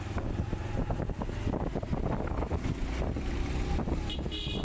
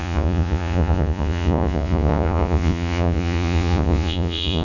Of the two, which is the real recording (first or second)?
first